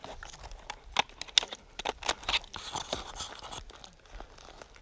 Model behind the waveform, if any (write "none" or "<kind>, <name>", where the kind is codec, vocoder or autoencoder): none